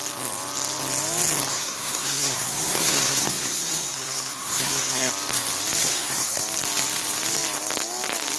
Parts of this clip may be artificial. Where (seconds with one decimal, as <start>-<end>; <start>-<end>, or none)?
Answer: 1.5-5.1; 5.8-6.4